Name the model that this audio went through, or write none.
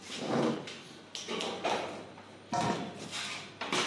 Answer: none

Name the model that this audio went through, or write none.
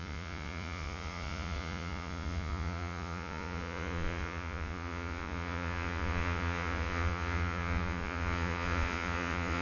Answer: vocoder, Vocos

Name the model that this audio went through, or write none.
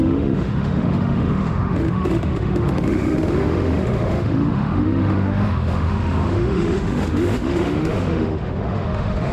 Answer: autoencoder, DAC-VAE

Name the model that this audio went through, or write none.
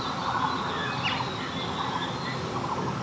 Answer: none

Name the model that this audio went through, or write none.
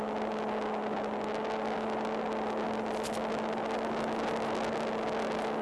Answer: none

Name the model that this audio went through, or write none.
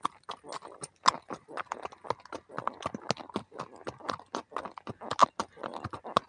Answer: none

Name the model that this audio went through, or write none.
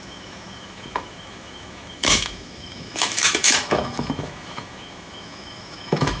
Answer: autoencoder, DAC-VAE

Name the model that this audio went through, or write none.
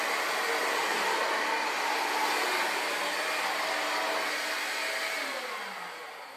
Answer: none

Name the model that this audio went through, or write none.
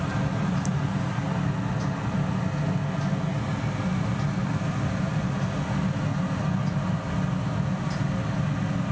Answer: none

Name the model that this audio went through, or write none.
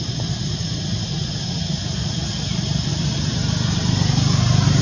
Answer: none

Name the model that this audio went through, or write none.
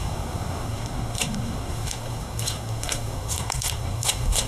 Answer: codec, SNAC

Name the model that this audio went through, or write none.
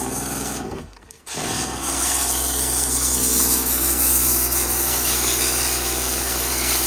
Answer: codec, SNAC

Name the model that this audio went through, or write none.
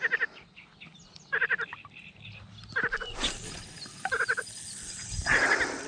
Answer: none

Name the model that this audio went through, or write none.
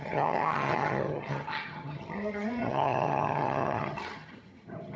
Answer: vocoder, HiFi-GAN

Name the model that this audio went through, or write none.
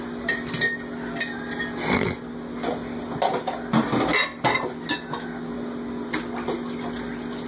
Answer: none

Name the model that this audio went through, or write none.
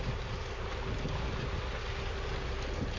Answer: none